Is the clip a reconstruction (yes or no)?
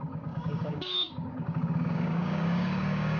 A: yes